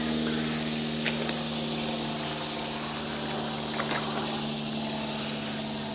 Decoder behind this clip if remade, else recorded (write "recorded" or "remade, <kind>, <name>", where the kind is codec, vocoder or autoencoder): recorded